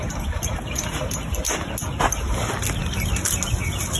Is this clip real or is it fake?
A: real